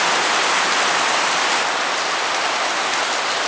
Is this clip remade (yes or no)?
no